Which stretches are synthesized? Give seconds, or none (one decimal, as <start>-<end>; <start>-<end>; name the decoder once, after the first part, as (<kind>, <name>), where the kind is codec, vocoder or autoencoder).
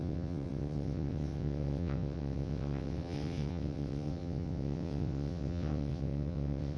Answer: 0.0-6.8 (vocoder, WaveNeXt)